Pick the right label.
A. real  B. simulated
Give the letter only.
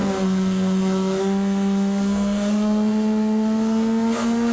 B